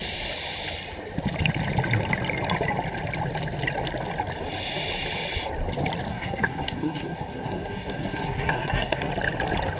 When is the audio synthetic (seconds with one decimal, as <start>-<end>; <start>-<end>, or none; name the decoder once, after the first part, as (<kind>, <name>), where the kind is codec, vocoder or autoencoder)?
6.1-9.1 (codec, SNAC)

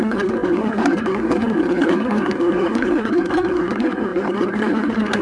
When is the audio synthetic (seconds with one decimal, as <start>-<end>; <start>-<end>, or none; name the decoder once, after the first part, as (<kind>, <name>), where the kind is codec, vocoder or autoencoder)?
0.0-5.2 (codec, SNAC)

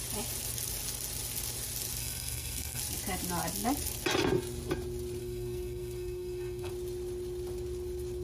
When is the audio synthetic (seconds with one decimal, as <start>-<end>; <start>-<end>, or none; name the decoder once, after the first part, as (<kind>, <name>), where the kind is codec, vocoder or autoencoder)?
2.0-2.8 (codec, SNAC); 5.2-6.7

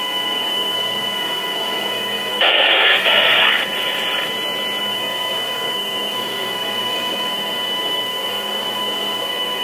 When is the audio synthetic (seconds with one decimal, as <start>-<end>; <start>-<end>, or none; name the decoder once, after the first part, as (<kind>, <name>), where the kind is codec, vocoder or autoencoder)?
0.0-3.6 (codec, SNAC); 4.8-9.6

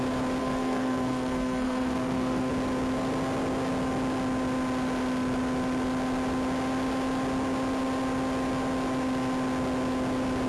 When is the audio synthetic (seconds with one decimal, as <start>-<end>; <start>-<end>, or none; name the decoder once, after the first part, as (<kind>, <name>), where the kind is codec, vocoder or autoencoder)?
0.4-2.5 (codec, SNAC)

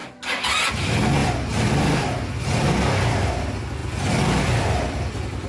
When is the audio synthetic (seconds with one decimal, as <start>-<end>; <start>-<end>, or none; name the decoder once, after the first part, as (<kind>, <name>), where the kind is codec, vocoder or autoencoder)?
none

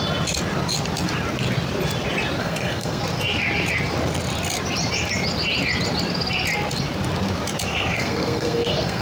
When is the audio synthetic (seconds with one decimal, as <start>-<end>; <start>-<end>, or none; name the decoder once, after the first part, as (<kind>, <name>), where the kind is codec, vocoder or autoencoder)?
2.4-3.0 (codec, SNAC); 7.7-9.0

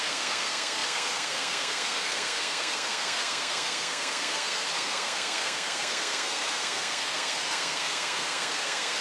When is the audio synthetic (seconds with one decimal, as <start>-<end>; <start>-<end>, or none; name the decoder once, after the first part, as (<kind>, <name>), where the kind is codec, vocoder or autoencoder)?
0.0-9.0 (codec, SNAC)